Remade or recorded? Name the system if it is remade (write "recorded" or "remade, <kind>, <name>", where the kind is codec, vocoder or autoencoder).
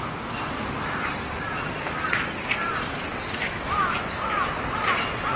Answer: recorded